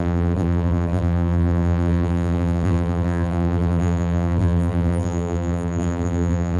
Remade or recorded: remade